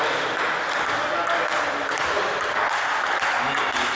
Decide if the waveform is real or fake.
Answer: real